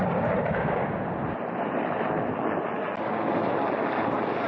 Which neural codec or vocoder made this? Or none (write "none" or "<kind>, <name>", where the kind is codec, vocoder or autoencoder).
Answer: none